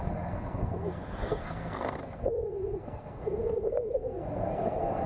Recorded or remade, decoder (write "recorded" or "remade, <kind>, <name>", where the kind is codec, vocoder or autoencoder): remade, codec, SNAC